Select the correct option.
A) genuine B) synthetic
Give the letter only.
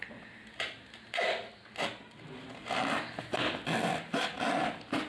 A